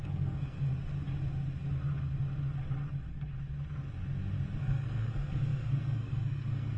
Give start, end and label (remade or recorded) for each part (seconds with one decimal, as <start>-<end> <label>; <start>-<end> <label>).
0.0-0.7 remade; 0.7-4.6 recorded; 4.6-6.8 remade